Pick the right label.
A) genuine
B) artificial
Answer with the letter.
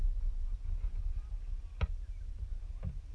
A